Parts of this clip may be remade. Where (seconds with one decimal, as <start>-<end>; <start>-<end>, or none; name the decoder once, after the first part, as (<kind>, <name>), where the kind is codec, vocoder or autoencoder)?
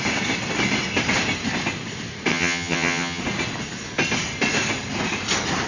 2.3-3.2 (vocoder, HiFi-GAN)